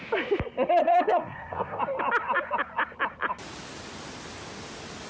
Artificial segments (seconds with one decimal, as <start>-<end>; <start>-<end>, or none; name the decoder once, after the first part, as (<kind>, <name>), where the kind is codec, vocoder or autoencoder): 0.8-1.8 (codec, SNAC)